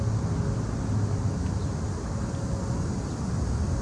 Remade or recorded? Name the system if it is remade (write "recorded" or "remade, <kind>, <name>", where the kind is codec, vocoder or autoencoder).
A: recorded